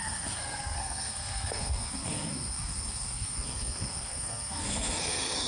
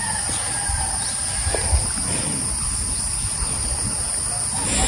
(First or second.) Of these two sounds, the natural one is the second